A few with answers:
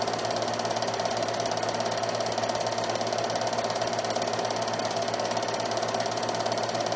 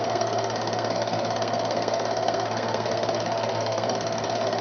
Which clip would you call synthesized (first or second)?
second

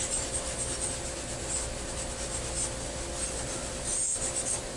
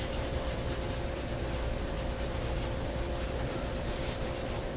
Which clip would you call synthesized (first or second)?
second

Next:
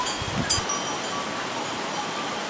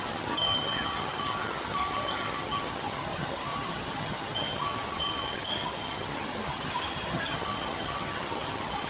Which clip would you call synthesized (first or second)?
second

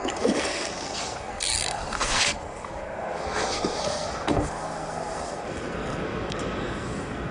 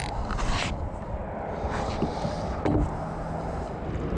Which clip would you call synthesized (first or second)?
first